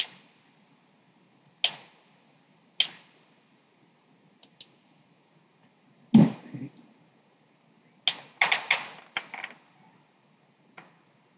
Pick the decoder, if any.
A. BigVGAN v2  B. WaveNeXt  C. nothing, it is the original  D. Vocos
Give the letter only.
C